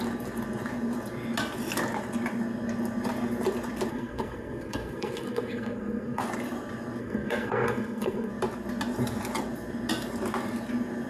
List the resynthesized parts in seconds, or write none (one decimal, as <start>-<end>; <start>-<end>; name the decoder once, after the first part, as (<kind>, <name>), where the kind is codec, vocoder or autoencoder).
3.9-6.2 (codec, SNAC); 7.0-8.3